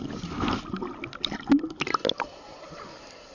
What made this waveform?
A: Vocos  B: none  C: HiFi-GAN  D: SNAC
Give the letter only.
B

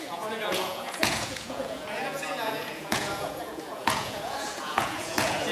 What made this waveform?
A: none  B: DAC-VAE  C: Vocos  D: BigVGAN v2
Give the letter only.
C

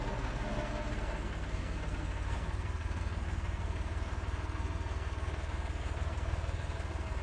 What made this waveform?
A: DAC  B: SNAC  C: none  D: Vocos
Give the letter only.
B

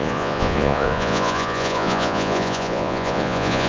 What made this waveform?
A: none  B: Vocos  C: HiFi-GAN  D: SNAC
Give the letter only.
B